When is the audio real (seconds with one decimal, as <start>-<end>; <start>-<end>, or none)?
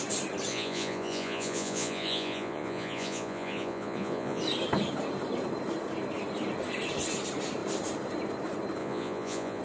0.0-0.5; 4.4-8.8